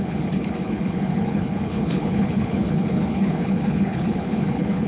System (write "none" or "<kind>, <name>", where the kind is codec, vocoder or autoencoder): codec, HILCodec